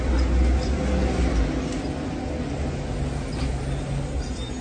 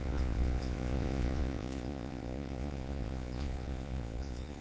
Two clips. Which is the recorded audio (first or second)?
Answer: first